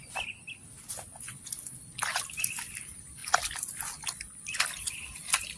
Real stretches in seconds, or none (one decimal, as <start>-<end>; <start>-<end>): 0.0-5.6